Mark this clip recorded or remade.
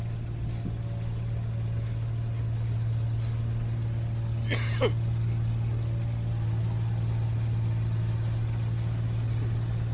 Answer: recorded